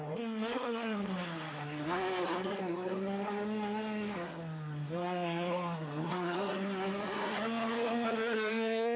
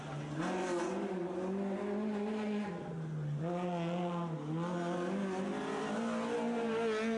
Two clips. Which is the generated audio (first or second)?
first